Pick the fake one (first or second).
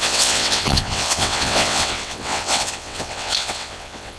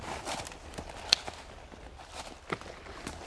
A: first